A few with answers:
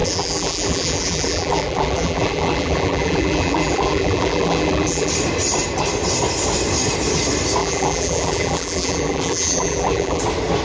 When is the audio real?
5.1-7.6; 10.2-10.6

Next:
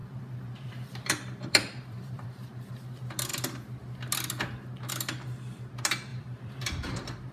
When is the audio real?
2.7-6.1

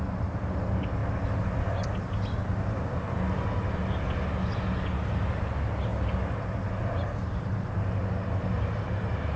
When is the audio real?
0.0-9.4